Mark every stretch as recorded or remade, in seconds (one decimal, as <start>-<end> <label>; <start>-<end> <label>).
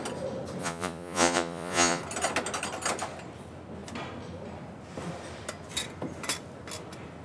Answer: 0.0-0.6 recorded; 0.6-2.0 remade; 2.0-7.2 recorded